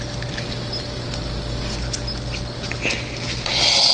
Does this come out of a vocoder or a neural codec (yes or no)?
no